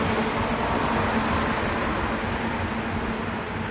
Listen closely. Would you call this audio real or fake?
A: real